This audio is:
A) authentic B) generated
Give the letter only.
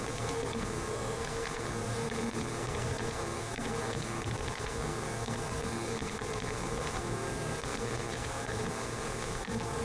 B